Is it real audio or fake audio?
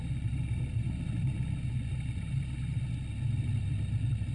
real